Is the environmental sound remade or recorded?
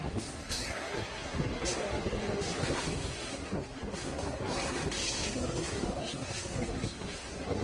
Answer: remade